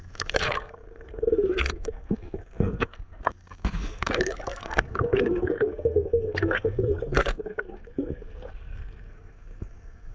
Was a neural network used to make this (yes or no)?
yes